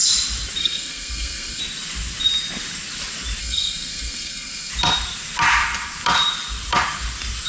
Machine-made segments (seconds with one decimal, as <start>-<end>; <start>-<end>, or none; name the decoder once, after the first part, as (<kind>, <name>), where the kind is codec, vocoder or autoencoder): 0.6-1.6 (codec, SNAC); 3.4-4.7